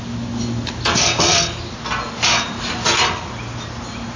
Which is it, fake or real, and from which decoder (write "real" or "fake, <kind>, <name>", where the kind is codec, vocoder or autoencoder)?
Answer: real